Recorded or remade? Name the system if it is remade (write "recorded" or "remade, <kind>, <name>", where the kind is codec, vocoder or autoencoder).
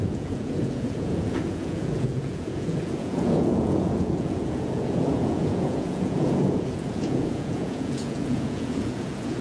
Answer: remade, vocoder, Vocos